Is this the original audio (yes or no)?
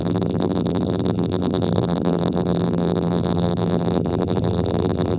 no